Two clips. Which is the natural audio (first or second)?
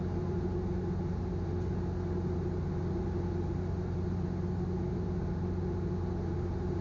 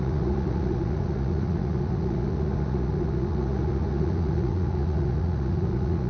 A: first